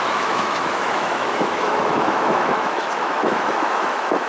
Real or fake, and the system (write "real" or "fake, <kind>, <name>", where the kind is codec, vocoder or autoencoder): fake, autoencoder, DAC-VAE